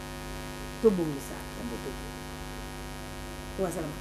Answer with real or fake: real